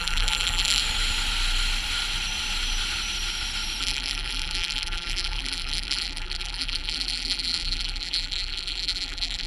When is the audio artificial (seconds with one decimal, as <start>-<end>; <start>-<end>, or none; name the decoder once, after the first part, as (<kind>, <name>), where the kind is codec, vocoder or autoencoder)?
0.0-0.8 (vocoder, BigVGAN v2); 3.8-9.5